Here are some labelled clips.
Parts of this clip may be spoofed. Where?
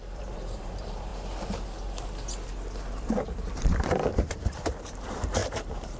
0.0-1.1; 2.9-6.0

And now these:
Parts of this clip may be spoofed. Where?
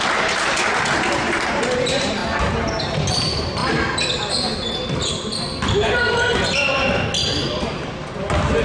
0.0-2.2; 2.8-3.6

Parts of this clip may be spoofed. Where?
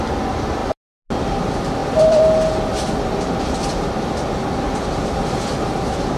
1.8-2.5